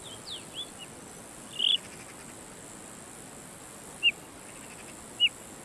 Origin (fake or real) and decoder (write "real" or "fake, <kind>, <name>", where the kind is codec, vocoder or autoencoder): real